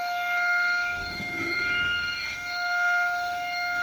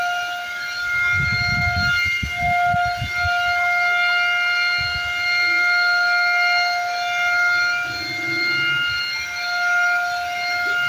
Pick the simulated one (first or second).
first